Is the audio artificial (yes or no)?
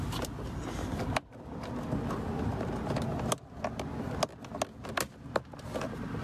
no